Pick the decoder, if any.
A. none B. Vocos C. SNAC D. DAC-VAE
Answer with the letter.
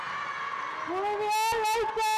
A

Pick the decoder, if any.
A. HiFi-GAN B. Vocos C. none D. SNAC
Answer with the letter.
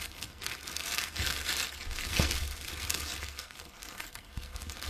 D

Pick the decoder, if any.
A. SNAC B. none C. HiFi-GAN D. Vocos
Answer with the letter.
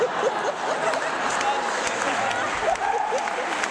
B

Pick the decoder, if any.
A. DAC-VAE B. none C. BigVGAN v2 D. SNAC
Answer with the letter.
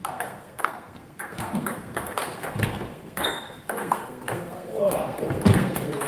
D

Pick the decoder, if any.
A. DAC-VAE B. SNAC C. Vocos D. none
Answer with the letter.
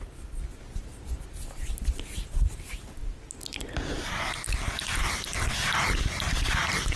D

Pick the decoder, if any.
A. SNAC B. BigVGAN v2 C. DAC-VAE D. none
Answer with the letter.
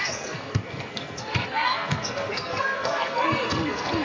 A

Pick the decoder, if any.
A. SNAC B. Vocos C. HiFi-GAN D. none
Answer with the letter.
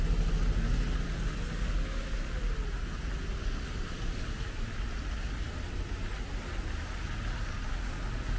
D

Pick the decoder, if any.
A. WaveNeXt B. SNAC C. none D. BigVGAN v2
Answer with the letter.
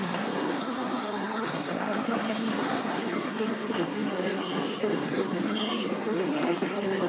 B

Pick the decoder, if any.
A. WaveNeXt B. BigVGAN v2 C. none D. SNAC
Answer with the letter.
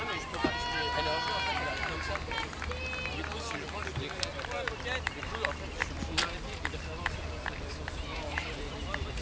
C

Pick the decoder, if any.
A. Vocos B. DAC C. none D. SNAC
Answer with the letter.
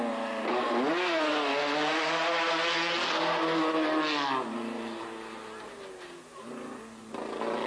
C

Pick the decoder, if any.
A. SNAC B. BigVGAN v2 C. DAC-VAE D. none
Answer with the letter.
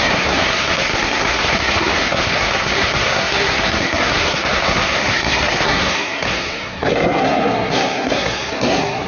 A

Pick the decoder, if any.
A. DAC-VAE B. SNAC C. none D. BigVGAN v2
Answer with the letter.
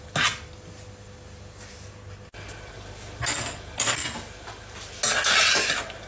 C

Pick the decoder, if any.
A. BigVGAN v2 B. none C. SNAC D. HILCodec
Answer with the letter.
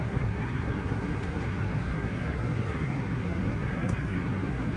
C